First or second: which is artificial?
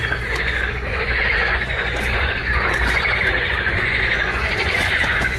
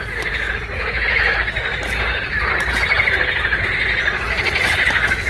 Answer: first